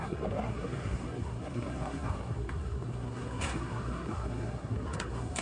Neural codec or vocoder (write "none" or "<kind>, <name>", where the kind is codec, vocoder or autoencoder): codec, SNAC